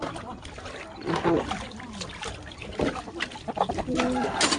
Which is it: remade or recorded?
recorded